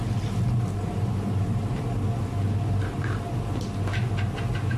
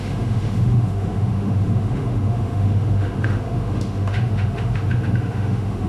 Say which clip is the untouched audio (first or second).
first